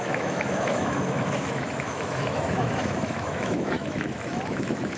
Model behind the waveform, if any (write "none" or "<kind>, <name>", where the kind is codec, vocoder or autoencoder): autoencoder, DAC-VAE